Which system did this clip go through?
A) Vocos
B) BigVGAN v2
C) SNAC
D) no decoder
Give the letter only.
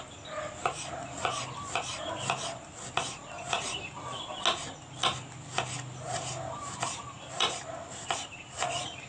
D